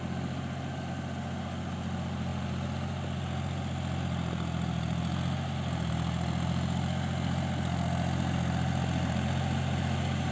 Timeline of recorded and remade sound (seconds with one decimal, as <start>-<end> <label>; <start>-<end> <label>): 0.0-10.3 recorded